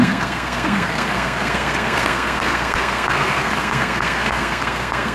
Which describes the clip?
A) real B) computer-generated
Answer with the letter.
B